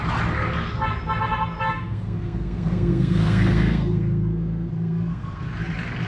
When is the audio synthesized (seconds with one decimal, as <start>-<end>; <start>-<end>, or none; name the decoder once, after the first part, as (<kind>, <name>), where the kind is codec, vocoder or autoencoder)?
1.7-5.4 (codec, SNAC)